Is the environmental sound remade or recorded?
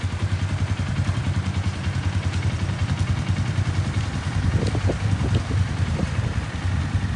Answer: remade